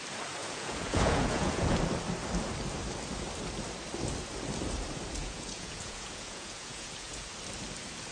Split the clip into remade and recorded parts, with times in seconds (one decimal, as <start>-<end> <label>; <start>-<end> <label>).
0.0-0.4 recorded; 0.4-1.8 remade; 1.8-5.2 recorded; 5.2-7.3 remade; 7.3-8.1 recorded